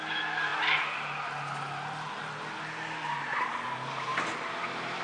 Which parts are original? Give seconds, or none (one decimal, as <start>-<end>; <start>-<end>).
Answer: 0.0-4.1